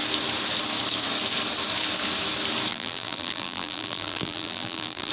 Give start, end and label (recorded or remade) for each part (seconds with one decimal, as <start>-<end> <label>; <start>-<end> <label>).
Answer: 0.0-2.7 recorded; 2.7-5.1 remade